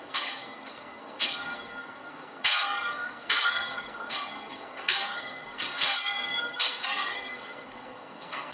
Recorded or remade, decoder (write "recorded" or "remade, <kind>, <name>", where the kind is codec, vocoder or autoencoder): remade, codec, SNAC